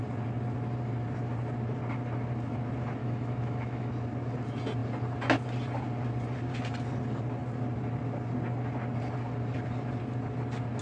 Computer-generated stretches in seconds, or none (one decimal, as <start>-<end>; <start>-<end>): 3.0-3.9